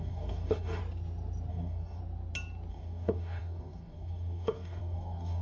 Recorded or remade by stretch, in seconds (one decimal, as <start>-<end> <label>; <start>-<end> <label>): 0.0-0.8 remade; 0.8-1.5 recorded; 1.5-2.0 remade; 2.0-2.7 recorded; 2.7-5.4 remade